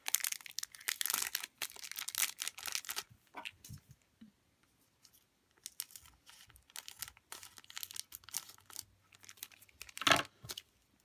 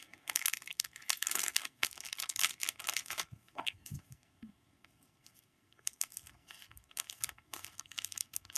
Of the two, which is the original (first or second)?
first